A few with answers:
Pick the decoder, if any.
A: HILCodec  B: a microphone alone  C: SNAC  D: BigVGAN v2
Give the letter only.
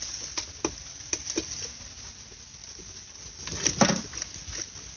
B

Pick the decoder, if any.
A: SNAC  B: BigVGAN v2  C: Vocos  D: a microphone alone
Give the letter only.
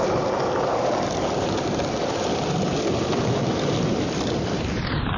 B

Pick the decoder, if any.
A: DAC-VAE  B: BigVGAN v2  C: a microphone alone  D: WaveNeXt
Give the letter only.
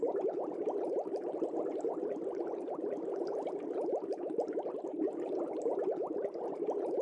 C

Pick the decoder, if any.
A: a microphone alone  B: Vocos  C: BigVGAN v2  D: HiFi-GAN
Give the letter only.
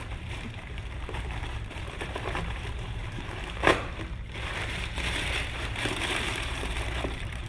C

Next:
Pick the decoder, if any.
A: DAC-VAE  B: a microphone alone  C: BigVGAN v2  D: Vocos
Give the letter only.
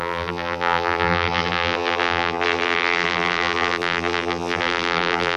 C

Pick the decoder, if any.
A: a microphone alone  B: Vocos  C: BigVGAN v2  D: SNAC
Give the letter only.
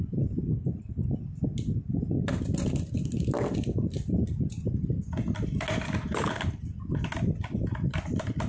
A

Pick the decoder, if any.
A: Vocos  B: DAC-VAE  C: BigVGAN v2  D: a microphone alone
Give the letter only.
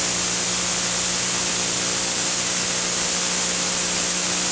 D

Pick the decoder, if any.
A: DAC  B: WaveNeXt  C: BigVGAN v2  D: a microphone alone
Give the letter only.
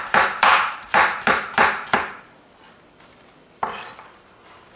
C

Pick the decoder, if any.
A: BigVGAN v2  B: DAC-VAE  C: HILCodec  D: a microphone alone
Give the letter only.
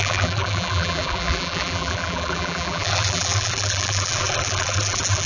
A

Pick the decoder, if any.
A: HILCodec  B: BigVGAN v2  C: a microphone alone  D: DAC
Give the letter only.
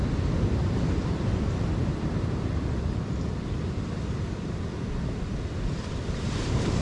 B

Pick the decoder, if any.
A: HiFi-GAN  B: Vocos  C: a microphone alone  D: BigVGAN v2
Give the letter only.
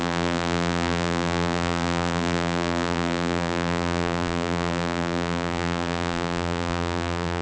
D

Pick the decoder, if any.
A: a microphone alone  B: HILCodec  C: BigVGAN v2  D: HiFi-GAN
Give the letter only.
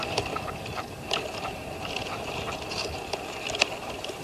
C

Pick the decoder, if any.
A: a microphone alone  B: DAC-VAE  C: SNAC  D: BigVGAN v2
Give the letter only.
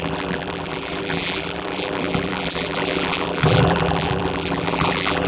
D